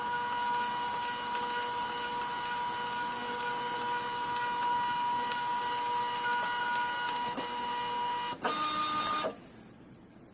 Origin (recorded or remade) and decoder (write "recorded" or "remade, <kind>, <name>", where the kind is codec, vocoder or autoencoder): recorded